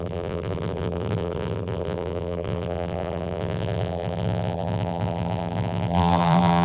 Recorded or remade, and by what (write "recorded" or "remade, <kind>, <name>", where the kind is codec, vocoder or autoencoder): remade, vocoder, BigVGAN v2